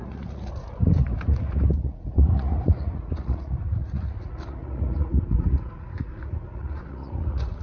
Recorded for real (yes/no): no